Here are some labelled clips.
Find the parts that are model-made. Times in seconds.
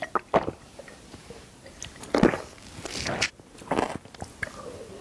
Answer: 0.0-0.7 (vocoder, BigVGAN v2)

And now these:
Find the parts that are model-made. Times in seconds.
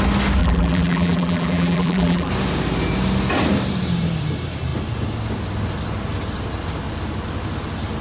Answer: 0.4-2.3 (vocoder, BigVGAN v2)